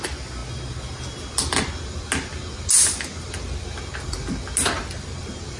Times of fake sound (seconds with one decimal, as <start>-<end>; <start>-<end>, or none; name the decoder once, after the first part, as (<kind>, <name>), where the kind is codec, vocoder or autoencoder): none

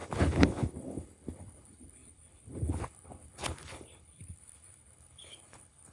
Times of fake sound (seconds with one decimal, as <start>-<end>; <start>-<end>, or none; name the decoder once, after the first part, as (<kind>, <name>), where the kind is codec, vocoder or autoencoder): 0.0-5.9 (codec, HILCodec)

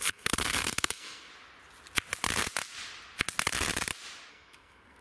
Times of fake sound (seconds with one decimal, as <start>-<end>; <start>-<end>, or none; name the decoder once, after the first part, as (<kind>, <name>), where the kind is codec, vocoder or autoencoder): 0.0-1.3 (codec, SNAC); 4.3-5.0

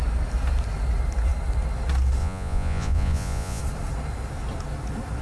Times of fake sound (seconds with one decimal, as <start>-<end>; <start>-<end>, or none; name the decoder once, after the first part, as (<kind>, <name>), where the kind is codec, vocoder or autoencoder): 2.2-3.6 (vocoder, Vocos)

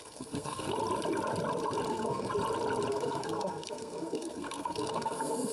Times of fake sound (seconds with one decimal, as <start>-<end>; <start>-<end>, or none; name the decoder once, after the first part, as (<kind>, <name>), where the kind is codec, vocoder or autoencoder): 0.0-0.7 (codec, SNAC); 1.9-2.3; 2.9-5.5

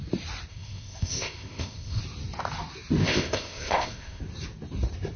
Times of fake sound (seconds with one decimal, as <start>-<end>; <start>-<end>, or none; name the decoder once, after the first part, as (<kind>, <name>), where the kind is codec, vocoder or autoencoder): 0.5-2.0 (codec, ZipCodec); 3.0-4.2